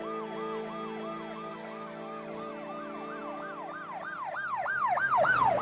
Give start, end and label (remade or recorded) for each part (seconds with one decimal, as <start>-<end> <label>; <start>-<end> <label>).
0.0-1.5 recorded; 1.5-2.5 remade; 2.5-5.6 recorded